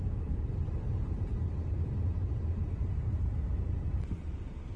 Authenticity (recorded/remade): remade